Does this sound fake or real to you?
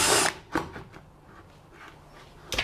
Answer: real